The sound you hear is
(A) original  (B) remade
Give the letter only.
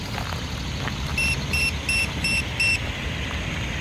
A